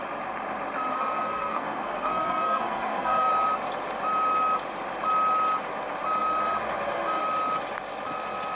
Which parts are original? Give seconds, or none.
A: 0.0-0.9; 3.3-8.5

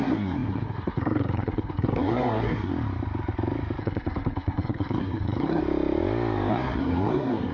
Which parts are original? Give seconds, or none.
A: 2.7-3.8; 5.6-6.5

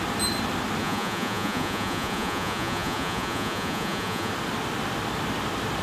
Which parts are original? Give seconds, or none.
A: 0.0-0.8; 4.3-5.8

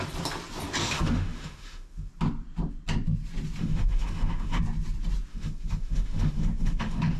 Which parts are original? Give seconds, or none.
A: 0.0-0.8; 2.1-3.6; 4.6-5.3

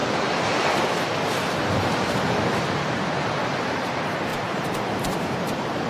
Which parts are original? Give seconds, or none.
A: 0.0-2.0

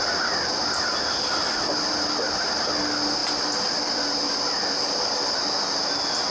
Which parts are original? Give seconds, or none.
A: 0.0-6.3